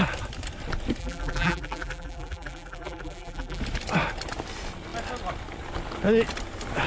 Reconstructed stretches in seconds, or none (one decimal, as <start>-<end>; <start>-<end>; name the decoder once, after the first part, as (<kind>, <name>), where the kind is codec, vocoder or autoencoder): 1.0-3.6 (vocoder, BigVGAN v2)